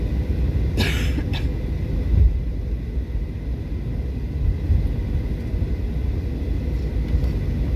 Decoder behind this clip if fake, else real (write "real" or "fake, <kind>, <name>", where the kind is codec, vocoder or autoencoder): real